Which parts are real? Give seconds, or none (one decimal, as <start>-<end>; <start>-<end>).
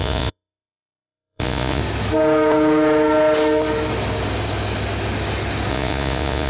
1.8-5.7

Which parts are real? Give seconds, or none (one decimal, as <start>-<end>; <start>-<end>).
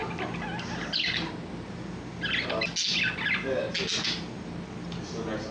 0.0-5.5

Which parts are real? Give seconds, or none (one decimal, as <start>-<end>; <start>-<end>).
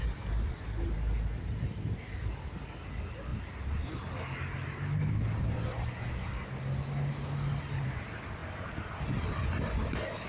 0.0-10.3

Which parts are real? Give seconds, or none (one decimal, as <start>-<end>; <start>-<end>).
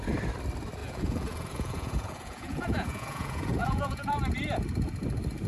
0.0-0.8; 4.1-5.5